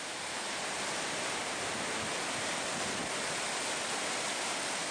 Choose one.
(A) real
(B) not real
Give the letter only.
B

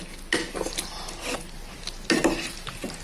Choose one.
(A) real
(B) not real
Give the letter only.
A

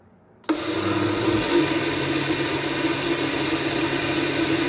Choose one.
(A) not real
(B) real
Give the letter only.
B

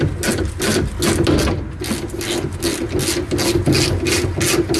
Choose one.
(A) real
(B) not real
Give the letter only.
A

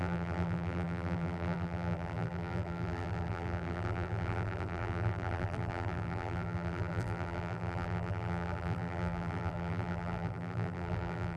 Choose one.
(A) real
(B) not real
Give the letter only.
B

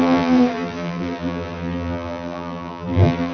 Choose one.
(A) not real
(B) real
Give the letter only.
A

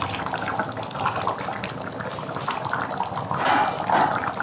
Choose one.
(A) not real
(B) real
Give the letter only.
A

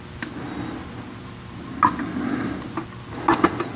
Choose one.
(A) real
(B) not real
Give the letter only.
A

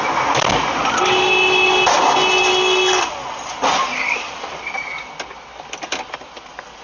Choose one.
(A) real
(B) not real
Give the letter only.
A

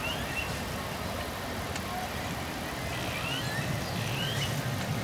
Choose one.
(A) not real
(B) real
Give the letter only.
B